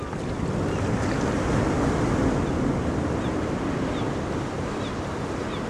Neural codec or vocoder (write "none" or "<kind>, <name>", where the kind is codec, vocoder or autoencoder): none